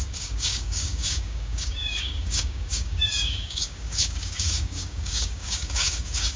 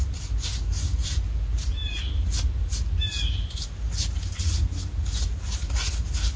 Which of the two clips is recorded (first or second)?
second